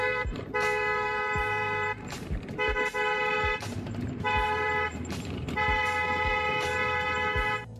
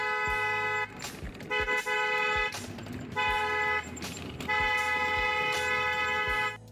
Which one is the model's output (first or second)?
first